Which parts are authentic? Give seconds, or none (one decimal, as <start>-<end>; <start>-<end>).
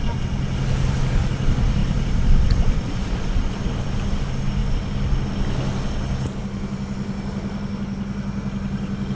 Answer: 0.0-1.8; 3.9-9.1